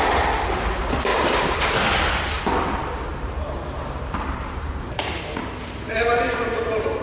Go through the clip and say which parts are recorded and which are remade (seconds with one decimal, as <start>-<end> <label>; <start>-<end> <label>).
0.0-1.1 recorded; 1.1-1.7 remade; 1.7-3.1 recorded; 3.1-7.0 remade

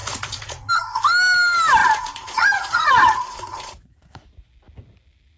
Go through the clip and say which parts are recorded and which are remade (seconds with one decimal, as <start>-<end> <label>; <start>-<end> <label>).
0.0-0.7 remade; 0.7-1.8 recorded; 1.8-4.5 remade; 4.5-5.4 recorded

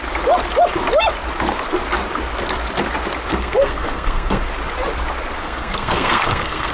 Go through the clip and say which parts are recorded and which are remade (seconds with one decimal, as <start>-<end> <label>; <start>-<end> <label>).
0.0-3.3 recorded; 3.3-4.5 remade; 4.5-5.4 recorded; 5.4-6.7 remade